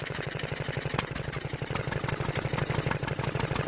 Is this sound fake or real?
real